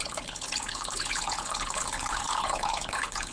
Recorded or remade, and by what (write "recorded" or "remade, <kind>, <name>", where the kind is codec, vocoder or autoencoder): remade, codec, HILCodec